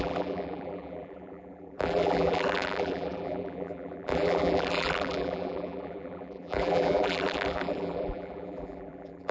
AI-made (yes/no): yes